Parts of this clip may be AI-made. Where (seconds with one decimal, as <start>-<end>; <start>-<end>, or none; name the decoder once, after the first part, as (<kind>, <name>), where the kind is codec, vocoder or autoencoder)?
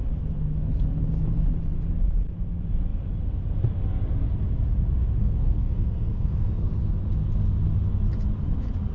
5.2-6.7 (codec, SNAC)